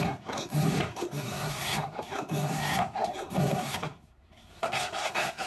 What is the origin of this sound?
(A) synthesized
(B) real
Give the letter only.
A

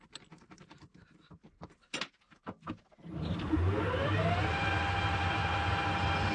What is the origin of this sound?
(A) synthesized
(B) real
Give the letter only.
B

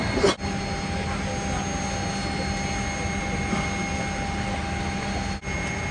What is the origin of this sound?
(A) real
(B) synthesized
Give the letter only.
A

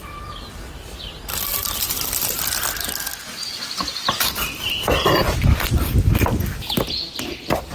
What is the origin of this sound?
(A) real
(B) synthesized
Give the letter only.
A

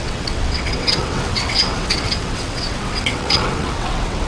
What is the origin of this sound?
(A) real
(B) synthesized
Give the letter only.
B